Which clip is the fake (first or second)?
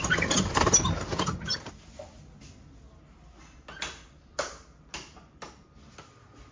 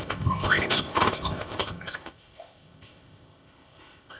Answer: second